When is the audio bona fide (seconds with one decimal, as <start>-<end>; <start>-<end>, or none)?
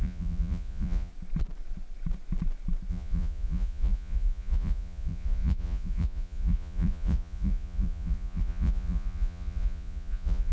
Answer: 1.1-2.9